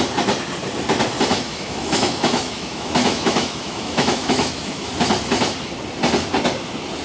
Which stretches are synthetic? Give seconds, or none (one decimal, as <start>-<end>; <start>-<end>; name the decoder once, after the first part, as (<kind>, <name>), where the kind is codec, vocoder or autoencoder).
1.3-4.9 (autoencoder, DAC-VAE)